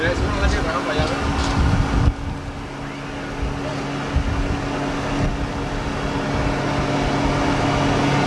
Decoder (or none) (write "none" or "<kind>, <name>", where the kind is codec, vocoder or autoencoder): none